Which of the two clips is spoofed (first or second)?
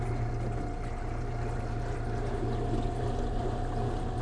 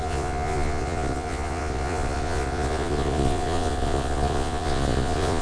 second